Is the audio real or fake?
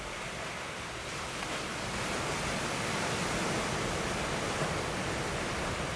real